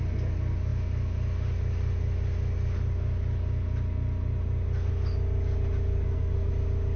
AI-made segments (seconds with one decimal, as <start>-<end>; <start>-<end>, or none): 5.9-6.5